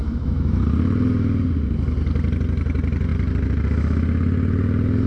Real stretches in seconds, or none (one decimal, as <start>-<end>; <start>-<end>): 0.6-5.1